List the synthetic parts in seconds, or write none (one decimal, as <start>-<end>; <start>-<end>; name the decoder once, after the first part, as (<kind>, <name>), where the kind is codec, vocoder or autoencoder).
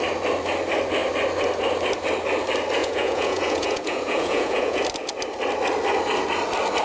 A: 2.8-4.8 (vocoder, Vocos)